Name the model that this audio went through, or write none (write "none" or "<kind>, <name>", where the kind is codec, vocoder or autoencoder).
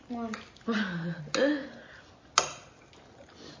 none